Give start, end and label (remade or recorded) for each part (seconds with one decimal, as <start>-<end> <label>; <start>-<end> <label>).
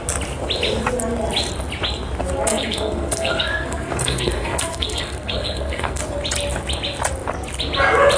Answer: 0.0-2.5 recorded; 2.5-6.0 remade; 6.0-8.2 recorded